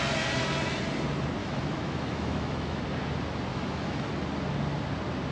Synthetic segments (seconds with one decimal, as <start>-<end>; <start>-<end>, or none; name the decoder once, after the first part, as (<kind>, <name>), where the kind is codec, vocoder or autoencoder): 1.4-2.8 (autoencoder, DAC-VAE); 3.5-4.1